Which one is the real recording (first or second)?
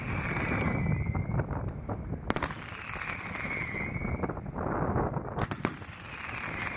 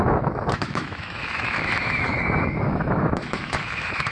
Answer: first